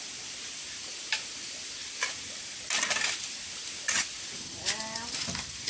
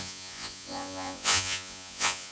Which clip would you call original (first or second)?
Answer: first